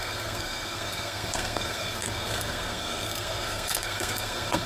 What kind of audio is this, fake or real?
fake